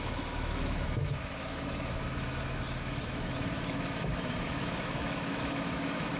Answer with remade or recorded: remade